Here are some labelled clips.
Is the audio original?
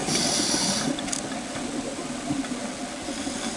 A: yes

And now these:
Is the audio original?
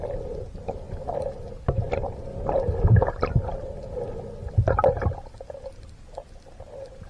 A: yes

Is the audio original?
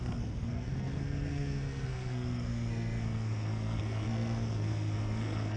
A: no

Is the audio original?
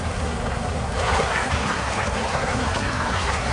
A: no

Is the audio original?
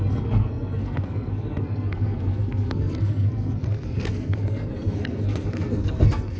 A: no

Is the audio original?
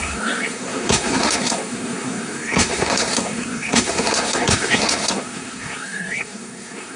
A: no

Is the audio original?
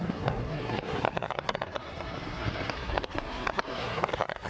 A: no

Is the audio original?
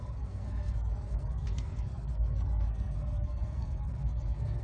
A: no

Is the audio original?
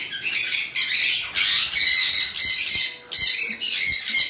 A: yes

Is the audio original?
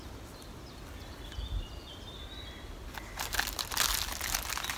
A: yes